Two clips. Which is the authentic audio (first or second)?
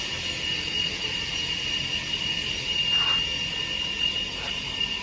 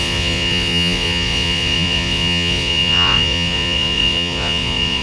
first